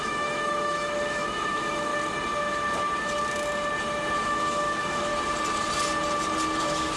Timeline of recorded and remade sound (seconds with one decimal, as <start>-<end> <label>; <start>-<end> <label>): 0.0-1.9 remade; 1.9-4.2 recorded; 4.2-5.1 remade; 5.1-6.6 recorded; 6.6-7.0 remade